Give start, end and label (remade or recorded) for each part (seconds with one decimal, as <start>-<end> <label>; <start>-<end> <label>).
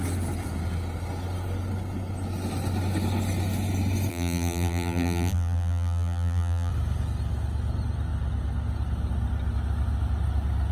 0.0-4.1 recorded; 4.1-6.7 remade; 6.7-10.7 recorded